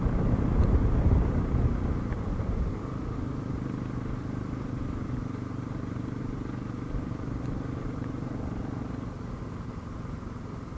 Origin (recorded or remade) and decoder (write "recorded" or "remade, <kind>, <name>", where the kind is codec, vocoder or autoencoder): recorded